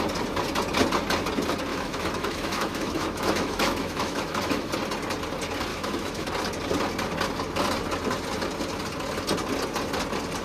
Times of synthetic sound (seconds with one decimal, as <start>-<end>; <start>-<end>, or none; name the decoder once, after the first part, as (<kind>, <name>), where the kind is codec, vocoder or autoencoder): 1.7-4.7 (autoencoder, DAC-VAE); 5.7-6.3